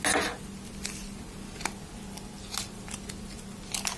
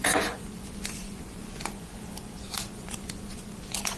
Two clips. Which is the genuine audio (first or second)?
first